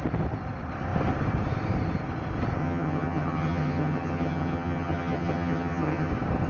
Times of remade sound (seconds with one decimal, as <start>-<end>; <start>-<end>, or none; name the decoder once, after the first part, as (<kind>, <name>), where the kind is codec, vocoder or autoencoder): 2.6-6.1 (vocoder, HiFi-GAN)